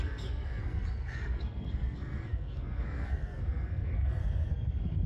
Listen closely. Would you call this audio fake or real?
fake